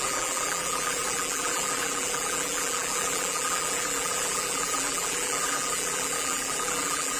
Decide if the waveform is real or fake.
fake